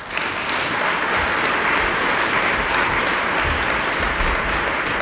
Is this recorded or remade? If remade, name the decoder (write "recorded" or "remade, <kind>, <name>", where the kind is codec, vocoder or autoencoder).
recorded